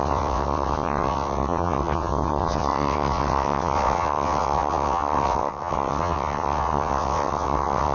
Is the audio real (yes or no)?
no